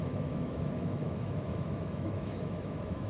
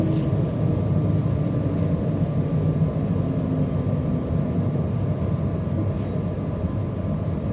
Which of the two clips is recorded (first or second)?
second